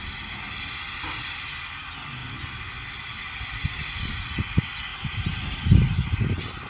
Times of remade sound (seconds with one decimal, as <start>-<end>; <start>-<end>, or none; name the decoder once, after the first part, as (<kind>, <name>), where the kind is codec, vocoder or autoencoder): none